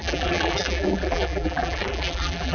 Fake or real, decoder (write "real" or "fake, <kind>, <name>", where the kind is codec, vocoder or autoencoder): fake, vocoder, BigVGAN v2